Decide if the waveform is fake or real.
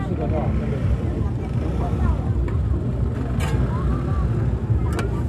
real